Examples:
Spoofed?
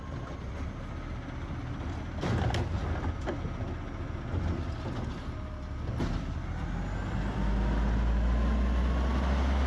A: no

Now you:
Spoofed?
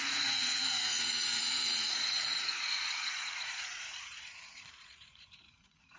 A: yes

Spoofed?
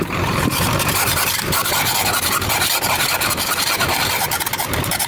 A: yes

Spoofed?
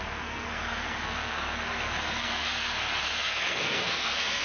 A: yes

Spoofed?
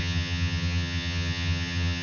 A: yes